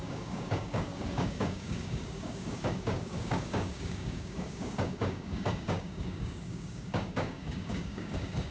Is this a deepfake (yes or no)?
yes